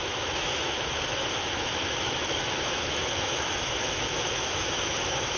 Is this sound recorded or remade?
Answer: remade